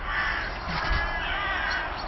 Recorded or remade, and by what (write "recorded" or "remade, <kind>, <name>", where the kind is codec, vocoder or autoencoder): recorded